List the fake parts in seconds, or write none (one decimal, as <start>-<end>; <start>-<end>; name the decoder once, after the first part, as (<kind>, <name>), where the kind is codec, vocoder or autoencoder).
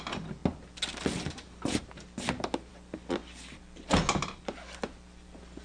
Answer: none